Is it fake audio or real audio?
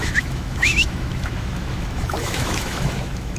fake